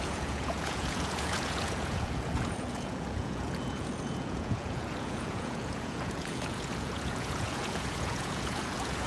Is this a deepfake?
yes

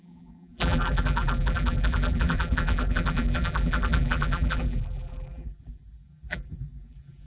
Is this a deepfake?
yes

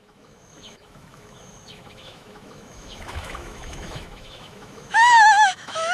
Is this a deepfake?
yes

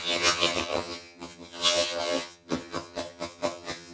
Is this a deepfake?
yes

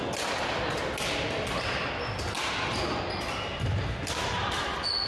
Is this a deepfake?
no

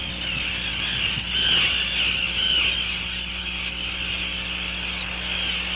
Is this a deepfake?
no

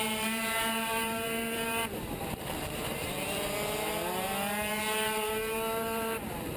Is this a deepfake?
yes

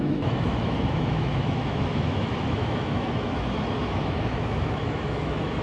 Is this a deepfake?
yes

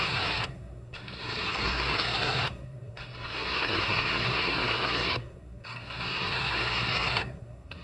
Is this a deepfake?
yes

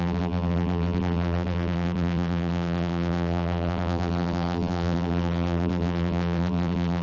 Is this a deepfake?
yes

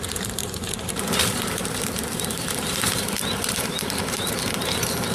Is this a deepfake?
yes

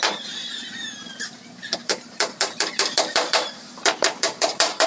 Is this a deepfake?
yes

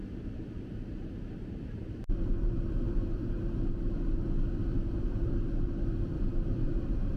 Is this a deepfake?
yes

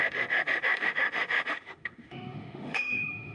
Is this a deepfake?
yes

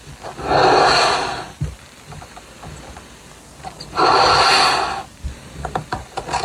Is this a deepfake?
no